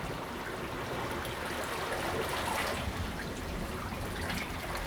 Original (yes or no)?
yes